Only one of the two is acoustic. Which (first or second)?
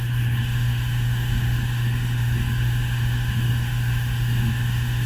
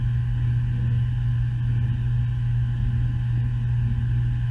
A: second